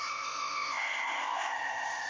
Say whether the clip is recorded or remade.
remade